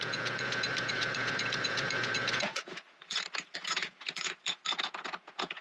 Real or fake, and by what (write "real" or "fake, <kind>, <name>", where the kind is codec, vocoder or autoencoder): fake, vocoder, Vocos